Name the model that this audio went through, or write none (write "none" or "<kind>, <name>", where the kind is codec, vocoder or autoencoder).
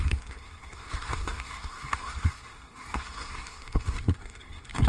codec, SNAC